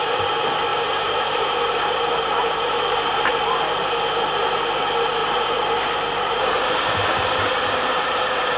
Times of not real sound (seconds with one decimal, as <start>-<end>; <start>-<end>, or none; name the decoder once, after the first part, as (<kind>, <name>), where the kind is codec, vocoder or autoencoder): 0.7-3.3 (vocoder, BigVGAN v2); 5.2-8.2